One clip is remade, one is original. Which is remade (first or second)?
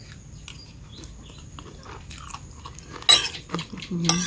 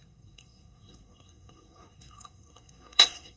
second